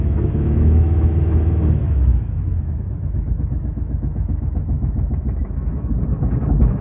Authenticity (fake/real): fake